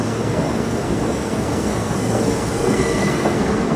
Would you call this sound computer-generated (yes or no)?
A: yes